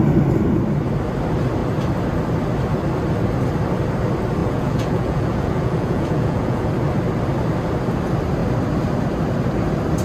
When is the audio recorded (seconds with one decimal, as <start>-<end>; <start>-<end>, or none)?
0.0-4.4; 6.7-10.0

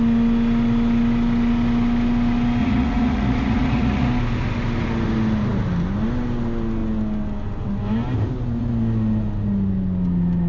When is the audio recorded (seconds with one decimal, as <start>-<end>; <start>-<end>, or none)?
0.0-2.6; 4.1-10.5

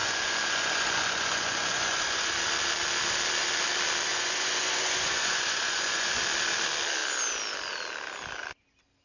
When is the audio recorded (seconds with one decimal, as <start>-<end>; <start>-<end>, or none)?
2.3-4.1; 6.2-9.0

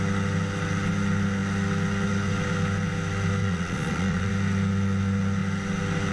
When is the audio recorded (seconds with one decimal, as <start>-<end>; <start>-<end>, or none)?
0.0-3.4; 4.3-6.1

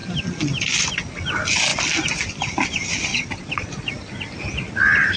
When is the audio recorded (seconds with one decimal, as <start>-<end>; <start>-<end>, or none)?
0.0-3.1; 3.9-5.2

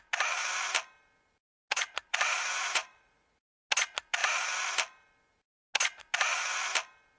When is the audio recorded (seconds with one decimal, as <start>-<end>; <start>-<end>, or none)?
0.0-2.1; 3.4-7.2